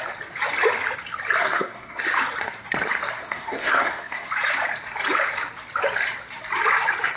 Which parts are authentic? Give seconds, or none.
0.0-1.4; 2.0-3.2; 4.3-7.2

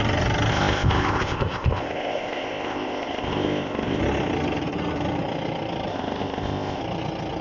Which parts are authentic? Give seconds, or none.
0.0-0.5; 4.0-5.9; 6.8-7.4

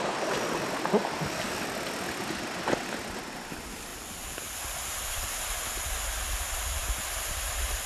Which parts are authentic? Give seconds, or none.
0.0-3.9; 5.8-7.9